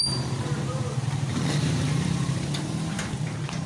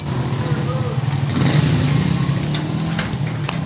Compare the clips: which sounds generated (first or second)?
first